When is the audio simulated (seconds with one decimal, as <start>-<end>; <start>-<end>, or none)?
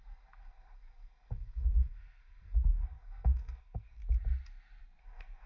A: 0.0-4.0; 5.0-5.5